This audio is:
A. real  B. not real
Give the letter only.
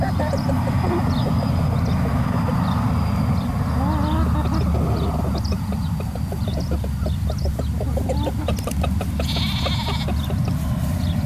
A